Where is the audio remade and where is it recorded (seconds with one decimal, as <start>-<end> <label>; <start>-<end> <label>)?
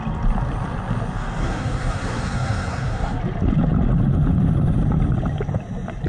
0.0-1.4 recorded; 1.4-3.2 remade; 3.2-6.1 recorded